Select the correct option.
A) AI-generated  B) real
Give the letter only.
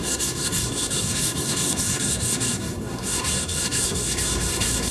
A